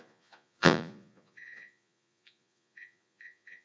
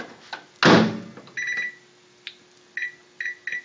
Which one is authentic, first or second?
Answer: second